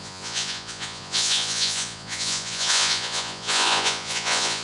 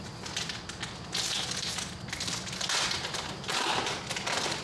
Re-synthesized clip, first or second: first